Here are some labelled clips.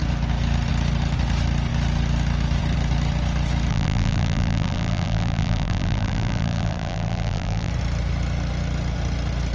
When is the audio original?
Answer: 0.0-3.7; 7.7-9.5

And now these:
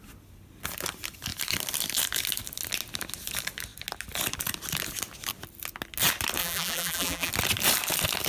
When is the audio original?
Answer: 0.0-6.4; 7.3-8.3

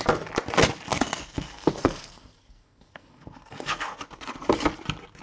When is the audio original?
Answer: 0.0-0.9; 4.0-5.2

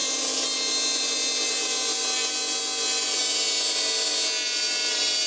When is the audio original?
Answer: 0.0-5.3